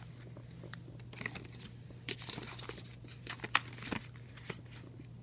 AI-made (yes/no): no